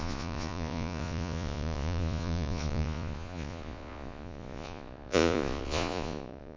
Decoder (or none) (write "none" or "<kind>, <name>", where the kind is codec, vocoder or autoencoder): vocoder, Vocos